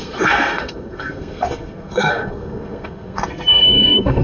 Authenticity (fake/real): fake